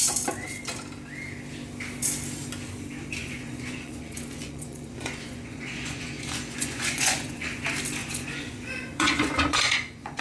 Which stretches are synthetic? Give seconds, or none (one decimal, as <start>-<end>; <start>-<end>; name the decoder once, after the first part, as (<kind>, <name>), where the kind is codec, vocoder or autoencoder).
3.2-7.6 (vocoder, Vocos); 8.0-10.2